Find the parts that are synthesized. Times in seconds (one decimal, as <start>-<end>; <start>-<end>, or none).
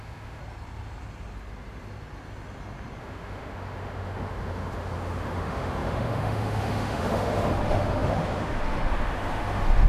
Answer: 0.0-0.4; 3.0-9.9